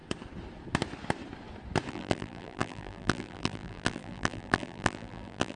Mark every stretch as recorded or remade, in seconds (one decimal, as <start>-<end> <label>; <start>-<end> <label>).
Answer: 0.0-1.9 recorded; 1.9-5.6 remade